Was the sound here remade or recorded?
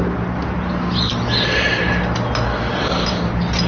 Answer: recorded